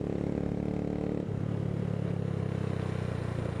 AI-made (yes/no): no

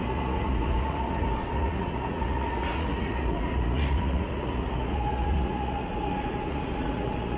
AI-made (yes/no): yes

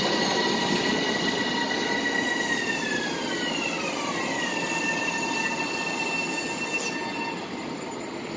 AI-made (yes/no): no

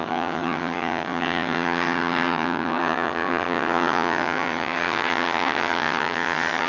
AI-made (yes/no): yes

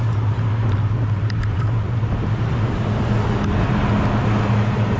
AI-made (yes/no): no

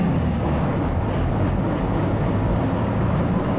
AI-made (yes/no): yes